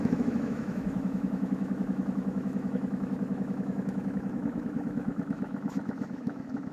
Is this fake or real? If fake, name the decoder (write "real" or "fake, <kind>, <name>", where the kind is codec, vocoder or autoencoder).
fake, autoencoder, DAC-VAE